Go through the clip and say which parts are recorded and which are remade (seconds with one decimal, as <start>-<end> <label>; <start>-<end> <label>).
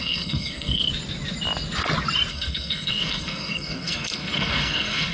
0.0-0.9 remade; 0.9-2.3 recorded; 2.3-5.1 remade